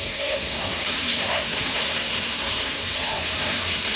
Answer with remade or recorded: remade